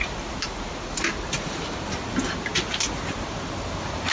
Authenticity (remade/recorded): recorded